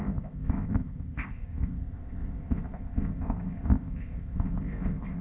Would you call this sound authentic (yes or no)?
no